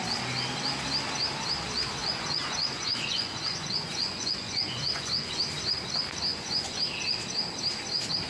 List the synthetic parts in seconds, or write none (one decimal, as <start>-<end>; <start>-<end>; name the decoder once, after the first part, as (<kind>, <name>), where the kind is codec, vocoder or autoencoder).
2.0-5.4 (vocoder, Vocos); 6.3-6.8